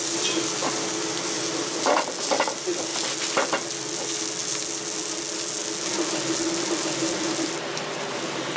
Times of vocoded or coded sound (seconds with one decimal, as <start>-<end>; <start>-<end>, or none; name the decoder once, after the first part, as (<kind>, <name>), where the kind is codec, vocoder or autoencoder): none